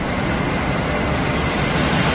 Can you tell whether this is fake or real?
real